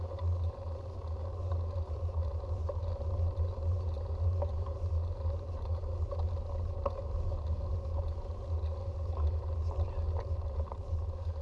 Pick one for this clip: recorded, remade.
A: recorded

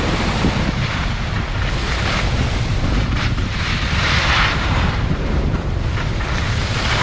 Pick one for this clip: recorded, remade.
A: remade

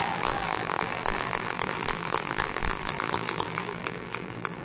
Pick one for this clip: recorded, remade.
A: remade